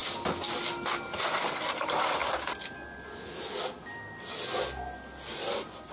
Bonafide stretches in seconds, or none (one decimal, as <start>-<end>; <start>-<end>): 0.0-5.9